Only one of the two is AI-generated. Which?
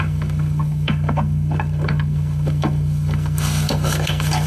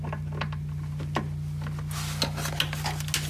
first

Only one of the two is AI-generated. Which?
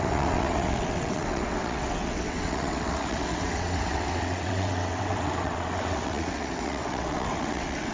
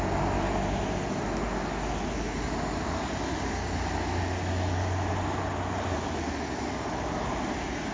first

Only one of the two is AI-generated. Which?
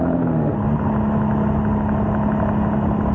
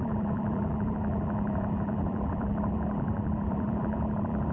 second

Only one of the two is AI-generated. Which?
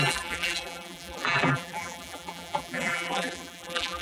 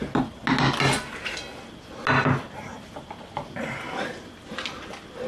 first